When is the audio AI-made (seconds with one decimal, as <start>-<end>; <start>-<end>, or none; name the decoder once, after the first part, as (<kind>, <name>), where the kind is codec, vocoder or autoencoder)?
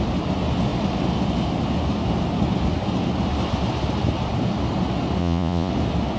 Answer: 5.2-5.7 (vocoder, Vocos)